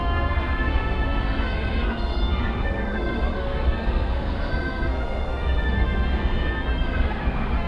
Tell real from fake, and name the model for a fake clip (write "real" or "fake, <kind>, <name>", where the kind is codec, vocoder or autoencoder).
fake, codec, SNAC